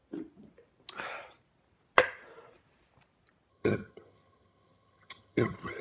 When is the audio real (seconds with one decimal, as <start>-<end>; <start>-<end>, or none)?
0.0-3.5